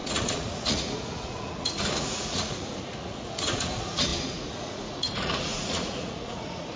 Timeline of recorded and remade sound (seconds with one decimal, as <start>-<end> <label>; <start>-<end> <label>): 0.0-6.8 remade